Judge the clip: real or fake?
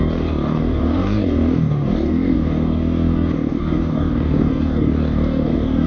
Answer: fake